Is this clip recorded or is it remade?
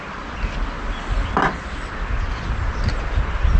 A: recorded